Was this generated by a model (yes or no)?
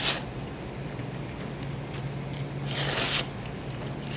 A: no